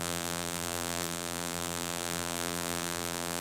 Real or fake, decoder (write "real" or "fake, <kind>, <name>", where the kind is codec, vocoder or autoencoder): fake, vocoder, BigVGAN v2